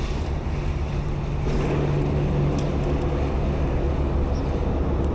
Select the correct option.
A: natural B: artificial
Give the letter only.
A